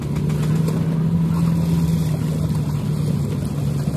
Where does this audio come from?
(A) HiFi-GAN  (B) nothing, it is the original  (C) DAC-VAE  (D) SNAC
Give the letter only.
B